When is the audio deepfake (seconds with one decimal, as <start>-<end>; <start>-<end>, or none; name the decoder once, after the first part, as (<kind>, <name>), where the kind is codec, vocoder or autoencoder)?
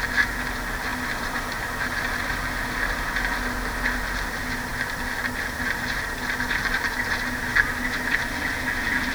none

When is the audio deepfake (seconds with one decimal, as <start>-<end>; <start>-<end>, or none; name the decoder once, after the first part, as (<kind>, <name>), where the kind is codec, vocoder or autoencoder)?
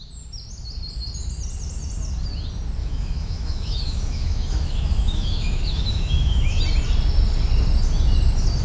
2.8-6.6 (autoencoder, DAC-VAE)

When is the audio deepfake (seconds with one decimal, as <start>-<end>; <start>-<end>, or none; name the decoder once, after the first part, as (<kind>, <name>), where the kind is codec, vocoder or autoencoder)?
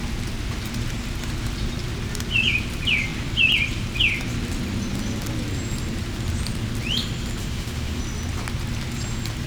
7.4-8.0 (autoencoder, DAC-VAE)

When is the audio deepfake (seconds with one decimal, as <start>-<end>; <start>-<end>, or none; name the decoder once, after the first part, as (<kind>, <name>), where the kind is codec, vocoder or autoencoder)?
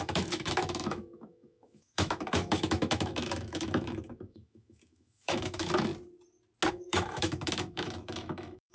0.0-5.9 (autoencoder, DAC-VAE); 6.7-8.7